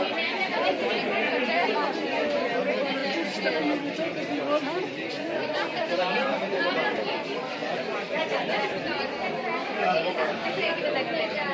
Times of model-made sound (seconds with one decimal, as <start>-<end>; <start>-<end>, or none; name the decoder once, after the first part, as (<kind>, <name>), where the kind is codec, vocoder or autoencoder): 9.6-10.7 (codec, DAC)